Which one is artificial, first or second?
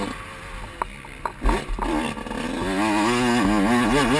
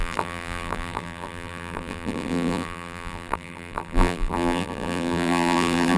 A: second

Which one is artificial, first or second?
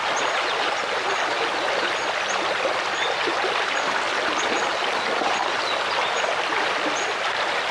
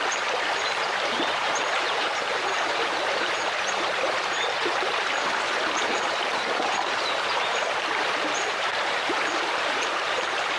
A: second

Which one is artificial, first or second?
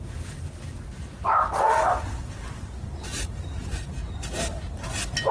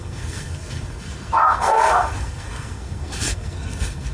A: second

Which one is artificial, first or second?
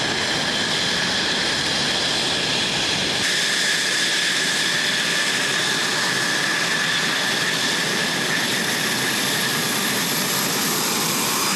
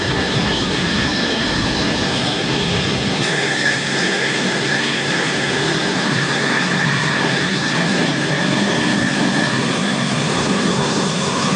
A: second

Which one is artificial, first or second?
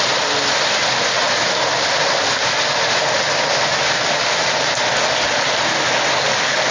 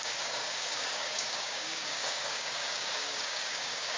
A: second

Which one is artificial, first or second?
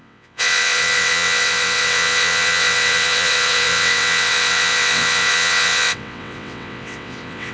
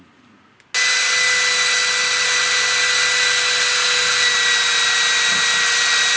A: first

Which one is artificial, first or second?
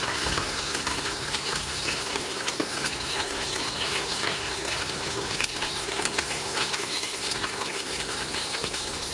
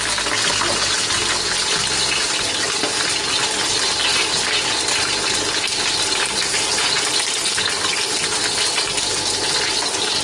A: first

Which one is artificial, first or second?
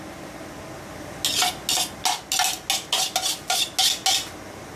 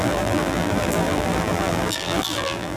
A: second